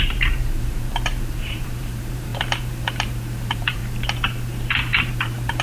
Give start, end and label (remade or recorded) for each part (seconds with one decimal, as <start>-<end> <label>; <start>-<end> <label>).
0.0-3.8 remade; 3.8-5.1 recorded; 5.1-5.6 remade